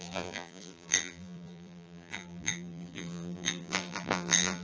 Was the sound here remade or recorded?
remade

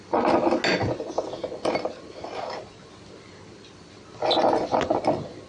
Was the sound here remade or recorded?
recorded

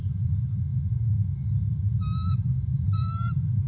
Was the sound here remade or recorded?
remade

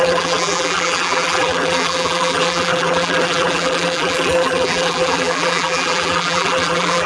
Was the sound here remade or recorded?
remade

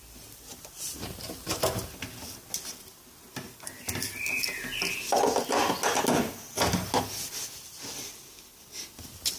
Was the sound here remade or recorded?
recorded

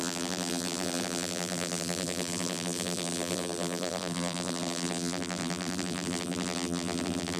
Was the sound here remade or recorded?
remade